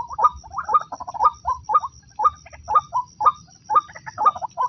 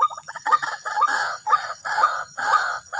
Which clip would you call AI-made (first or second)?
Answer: second